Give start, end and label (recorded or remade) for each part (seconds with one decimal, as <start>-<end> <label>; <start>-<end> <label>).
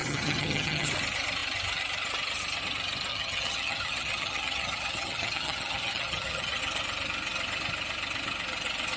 0.0-0.9 remade; 0.9-3.1 recorded; 3.1-6.6 remade; 6.6-9.0 recorded